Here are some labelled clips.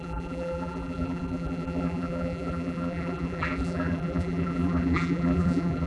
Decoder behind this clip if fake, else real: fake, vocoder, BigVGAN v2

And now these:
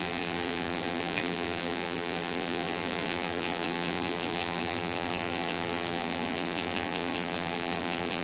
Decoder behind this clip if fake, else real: fake, vocoder, BigVGAN v2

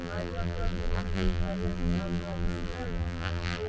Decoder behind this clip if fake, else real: fake, vocoder, BigVGAN v2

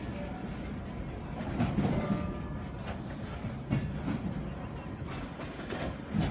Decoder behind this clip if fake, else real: real